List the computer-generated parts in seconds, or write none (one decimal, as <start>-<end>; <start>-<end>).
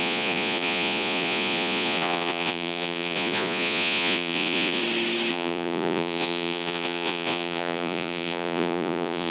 0.0-4.8; 5.3-9.3